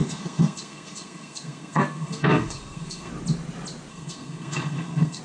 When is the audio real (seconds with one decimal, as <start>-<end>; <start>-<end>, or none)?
3.1-3.9